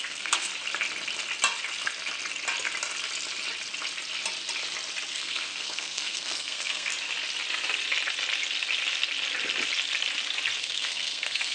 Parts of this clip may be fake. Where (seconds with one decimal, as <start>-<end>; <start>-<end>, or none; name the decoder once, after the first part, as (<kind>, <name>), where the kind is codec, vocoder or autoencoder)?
0.0-0.5 (codec, SNAC); 5.1-6.9; 10.6-11.5